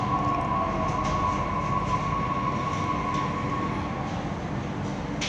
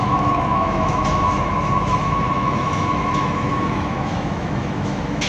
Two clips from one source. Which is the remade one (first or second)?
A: second